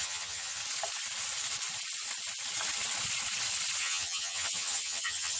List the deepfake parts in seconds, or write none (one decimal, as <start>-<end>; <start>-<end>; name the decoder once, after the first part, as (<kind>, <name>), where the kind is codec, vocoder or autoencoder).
0.0-0.6 (vocoder, HiFi-GAN); 3.8-5.4